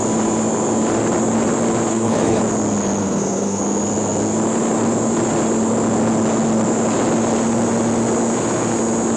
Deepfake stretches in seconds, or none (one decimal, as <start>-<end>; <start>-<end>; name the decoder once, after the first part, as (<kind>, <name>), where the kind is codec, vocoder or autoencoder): 1.9-2.4 (codec, SNAC); 3.0-3.6

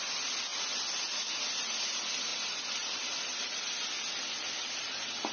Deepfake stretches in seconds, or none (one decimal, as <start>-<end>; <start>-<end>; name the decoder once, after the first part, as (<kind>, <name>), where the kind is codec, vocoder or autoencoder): none